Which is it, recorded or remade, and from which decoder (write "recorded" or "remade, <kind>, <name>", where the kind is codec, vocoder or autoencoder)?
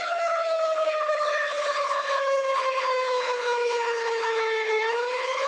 remade, codec, HILCodec